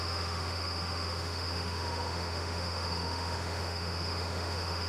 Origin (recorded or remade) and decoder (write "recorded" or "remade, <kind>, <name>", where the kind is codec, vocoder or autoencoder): remade, autoencoder, DAC-VAE